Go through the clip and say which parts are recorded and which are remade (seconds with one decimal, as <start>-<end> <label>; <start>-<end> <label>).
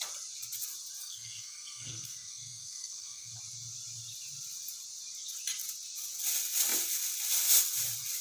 0.0-1.0 recorded; 1.0-3.3 remade; 3.3-8.2 recorded